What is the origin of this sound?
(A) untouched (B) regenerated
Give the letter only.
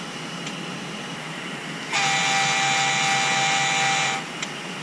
A